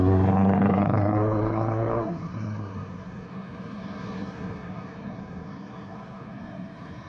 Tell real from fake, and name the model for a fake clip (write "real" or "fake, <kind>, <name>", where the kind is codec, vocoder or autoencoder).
fake, codec, SNAC